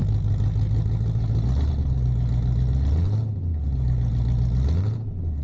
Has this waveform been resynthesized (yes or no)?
no